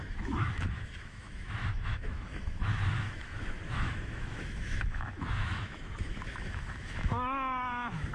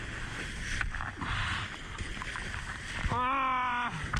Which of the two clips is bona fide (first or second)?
second